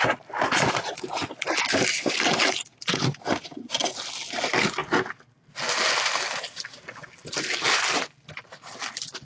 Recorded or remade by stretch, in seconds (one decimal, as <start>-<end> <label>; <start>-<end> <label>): 0.0-2.7 recorded; 2.7-3.3 remade; 3.3-9.2 recorded